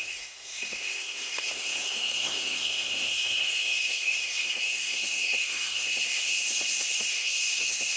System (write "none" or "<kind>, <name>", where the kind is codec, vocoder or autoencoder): codec, SNAC